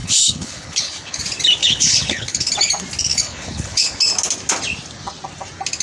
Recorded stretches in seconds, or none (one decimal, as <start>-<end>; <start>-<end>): 1.2-1.6; 2.5-3.1; 4.0-5.8